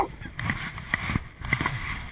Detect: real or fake real